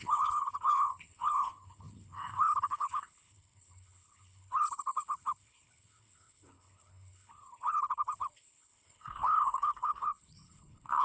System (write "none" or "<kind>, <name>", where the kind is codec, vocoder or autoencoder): codec, HILCodec